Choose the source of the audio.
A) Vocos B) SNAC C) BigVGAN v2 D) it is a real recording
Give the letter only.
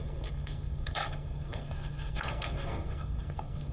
B